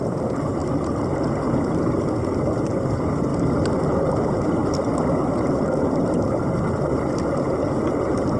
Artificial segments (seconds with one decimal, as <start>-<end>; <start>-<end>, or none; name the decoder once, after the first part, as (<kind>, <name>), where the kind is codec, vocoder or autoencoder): none